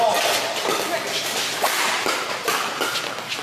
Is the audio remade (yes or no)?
no